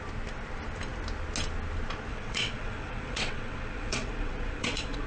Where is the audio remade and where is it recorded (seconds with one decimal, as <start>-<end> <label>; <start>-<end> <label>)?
0.0-2.1 recorded; 2.1-5.1 remade